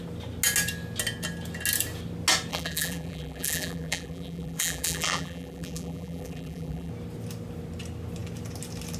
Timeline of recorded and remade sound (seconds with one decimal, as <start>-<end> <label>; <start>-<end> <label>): 0.0-2.5 recorded; 2.5-6.9 remade; 6.9-9.0 recorded